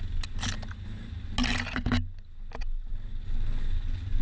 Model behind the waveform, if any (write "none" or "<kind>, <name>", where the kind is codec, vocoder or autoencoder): none